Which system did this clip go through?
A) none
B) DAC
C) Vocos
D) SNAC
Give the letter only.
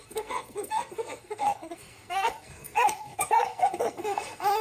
D